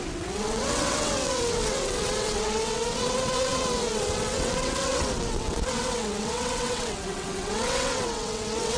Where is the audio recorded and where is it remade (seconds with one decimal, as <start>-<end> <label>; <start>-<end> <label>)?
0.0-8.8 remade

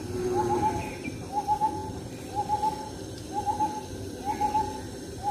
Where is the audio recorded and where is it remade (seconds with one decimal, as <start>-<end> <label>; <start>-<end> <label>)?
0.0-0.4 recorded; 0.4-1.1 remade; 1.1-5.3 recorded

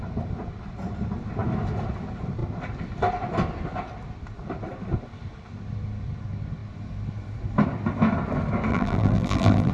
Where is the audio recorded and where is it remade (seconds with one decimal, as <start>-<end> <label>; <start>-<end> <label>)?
0.0-8.7 recorded; 8.7-9.7 remade

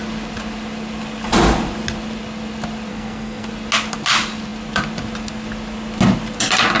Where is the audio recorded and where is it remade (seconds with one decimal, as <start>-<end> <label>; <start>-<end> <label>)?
0.0-2.9 recorded; 2.9-3.5 remade; 3.5-6.8 recorded

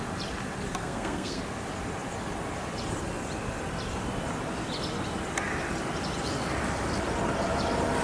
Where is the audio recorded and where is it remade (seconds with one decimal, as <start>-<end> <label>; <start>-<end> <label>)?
0.0-0.8 recorded; 0.8-1.4 remade; 1.4-8.0 recorded

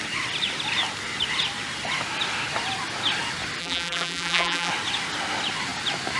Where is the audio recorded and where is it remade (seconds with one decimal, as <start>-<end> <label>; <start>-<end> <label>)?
0.0-3.6 recorded; 3.6-4.7 remade; 4.7-6.2 recorded